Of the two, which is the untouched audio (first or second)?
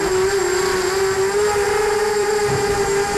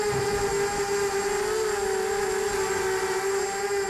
second